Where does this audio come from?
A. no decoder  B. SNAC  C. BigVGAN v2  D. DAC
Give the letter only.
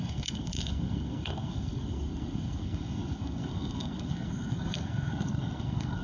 B